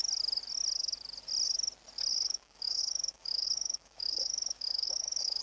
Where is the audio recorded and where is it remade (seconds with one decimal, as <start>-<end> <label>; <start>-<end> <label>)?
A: 0.0-2.1 recorded; 2.1-5.4 remade